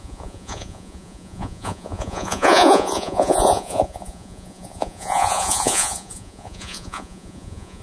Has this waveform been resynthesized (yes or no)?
yes